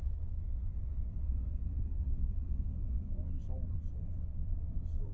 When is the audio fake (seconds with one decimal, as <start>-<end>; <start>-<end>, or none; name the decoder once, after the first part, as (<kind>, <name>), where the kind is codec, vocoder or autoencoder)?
none